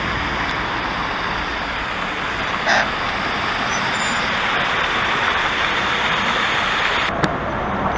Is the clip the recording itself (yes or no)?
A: yes